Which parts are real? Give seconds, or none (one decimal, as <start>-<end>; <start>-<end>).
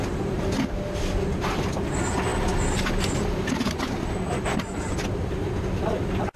0.0-6.4